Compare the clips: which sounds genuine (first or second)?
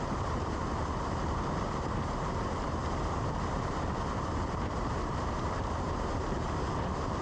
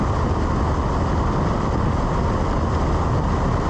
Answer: second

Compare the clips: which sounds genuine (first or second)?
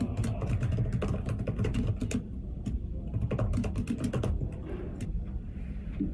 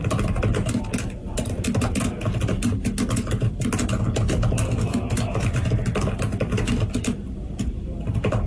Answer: second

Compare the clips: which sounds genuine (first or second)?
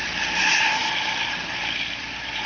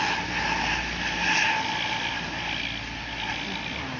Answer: second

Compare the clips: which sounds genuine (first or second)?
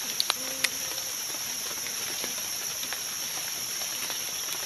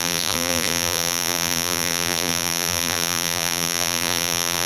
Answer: first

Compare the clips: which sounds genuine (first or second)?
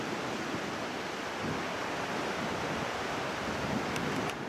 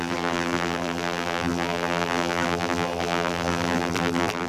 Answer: first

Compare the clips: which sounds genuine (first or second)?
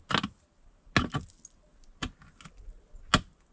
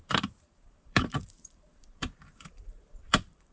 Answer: first